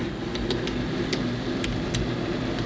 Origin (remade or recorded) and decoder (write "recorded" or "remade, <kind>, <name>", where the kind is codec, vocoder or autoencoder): recorded